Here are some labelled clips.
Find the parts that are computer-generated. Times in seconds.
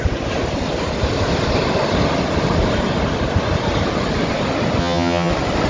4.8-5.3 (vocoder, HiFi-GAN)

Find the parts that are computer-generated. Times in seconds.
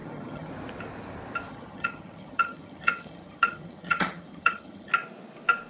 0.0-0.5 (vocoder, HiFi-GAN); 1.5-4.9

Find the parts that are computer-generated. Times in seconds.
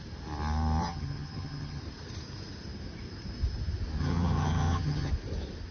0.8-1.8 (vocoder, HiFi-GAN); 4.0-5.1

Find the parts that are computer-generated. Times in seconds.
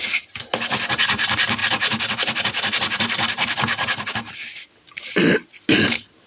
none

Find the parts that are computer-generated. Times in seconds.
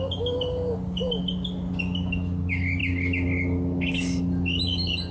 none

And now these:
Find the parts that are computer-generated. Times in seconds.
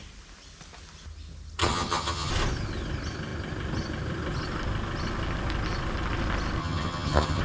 1.6-2.3 (vocoder, HiFi-GAN); 6.6-7.4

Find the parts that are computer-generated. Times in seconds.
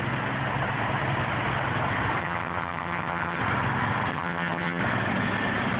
2.2-3.4 (vocoder, HiFi-GAN); 4.1-4.8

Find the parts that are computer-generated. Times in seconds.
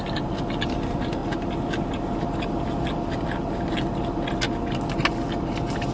none